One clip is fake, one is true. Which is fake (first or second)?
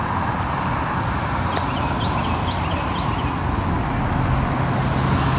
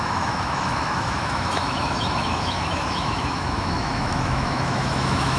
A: second